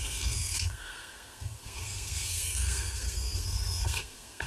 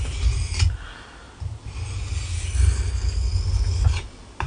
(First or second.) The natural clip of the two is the second